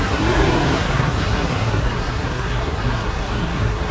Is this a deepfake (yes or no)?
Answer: yes